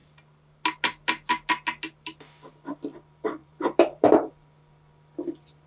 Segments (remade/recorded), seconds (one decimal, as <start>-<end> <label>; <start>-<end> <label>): 0.0-3.4 recorded; 3.4-4.3 remade; 4.3-5.7 recorded